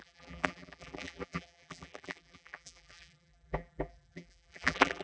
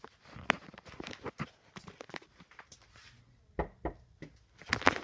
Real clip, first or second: second